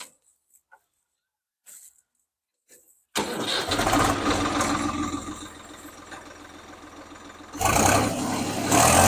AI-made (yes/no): no